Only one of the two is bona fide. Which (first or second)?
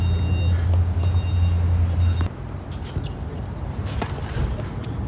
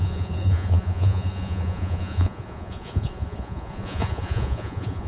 first